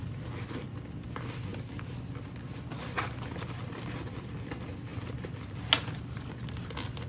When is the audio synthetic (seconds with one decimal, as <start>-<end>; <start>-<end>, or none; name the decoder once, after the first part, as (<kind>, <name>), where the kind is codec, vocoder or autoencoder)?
none